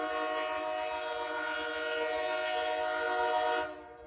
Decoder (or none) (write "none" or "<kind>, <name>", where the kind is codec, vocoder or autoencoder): none